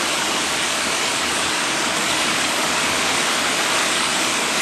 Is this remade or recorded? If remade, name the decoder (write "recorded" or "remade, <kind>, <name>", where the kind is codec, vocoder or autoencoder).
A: remade, codec, DAC